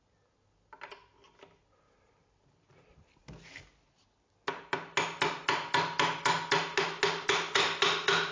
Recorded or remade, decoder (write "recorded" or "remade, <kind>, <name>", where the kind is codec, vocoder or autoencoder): recorded